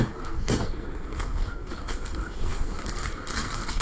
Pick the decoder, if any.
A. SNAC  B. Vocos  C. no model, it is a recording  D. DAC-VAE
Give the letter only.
A